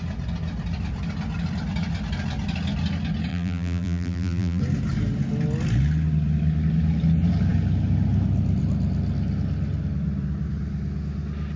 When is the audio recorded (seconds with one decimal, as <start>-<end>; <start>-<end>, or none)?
0.0-3.3; 4.6-11.6